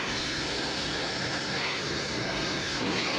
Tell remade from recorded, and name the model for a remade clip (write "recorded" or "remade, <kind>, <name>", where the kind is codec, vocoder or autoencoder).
remade, codec, SNAC